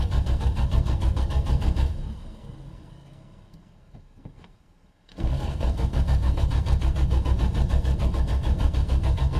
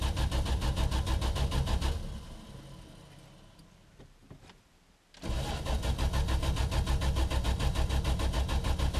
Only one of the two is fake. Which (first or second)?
first